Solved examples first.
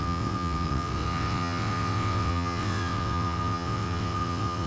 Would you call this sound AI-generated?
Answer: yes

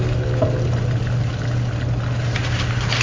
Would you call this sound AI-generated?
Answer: no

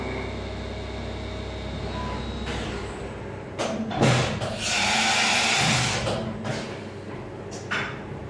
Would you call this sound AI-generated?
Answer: no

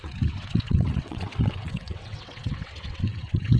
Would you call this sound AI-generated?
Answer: yes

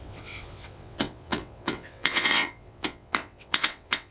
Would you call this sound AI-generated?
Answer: yes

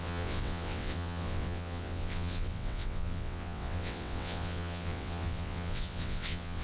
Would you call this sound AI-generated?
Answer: yes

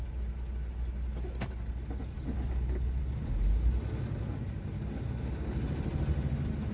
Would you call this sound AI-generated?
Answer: no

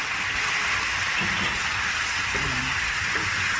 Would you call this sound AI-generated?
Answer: no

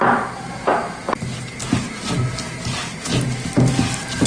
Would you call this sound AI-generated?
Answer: no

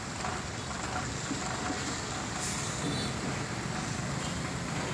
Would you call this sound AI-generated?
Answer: no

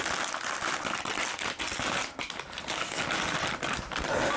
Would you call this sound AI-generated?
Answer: no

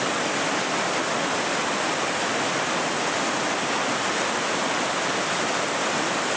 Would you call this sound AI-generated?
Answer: no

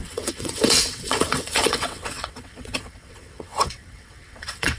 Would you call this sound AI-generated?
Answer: yes